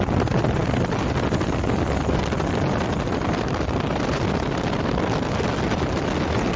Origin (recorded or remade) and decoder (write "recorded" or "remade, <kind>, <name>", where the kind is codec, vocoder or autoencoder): recorded